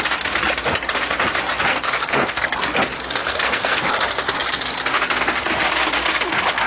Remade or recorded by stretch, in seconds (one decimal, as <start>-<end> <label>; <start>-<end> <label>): 0.0-1.7 recorded; 1.7-2.6 remade; 2.6-3.2 recorded; 3.2-3.9 remade; 3.9-6.7 recorded